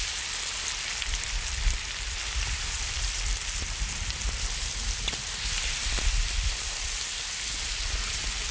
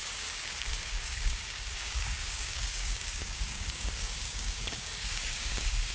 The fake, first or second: second